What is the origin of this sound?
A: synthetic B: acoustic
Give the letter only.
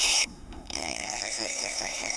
A